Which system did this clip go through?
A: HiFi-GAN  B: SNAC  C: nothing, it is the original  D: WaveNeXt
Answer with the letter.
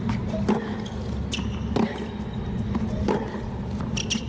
C